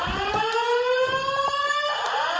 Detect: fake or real real